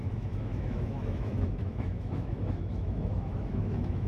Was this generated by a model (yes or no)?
yes